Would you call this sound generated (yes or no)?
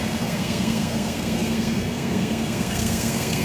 yes